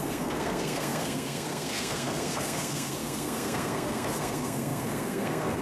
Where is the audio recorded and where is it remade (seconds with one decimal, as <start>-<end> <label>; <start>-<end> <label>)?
0.0-5.6 remade